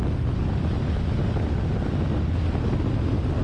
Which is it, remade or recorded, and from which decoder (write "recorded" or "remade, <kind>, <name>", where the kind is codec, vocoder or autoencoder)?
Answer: recorded